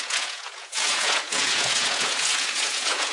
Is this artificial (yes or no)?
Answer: yes